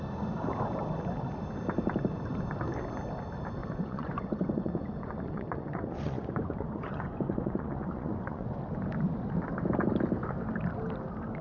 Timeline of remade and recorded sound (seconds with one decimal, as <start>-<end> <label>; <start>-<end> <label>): 0.0-3.6 recorded; 3.6-8.6 remade; 8.6-11.4 recorded